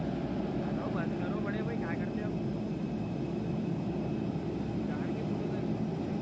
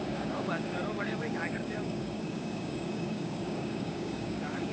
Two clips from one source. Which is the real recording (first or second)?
first